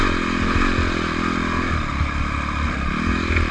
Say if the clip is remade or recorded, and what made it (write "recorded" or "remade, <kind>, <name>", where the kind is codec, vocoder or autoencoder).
recorded